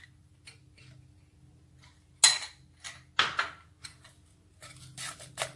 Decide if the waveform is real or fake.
real